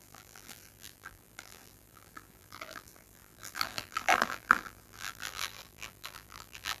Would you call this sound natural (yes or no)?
no